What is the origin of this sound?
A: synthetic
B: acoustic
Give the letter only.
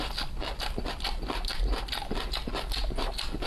B